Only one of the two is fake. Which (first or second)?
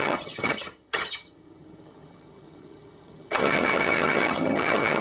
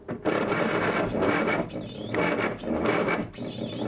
first